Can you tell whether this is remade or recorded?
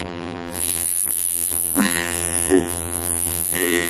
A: remade